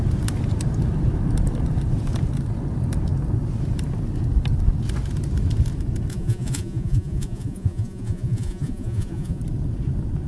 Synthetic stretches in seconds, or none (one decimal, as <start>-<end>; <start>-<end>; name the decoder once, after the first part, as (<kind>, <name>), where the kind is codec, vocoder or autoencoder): 6.1-9.4 (vocoder, Vocos)